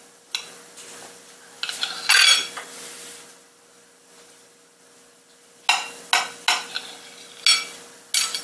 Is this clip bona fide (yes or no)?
yes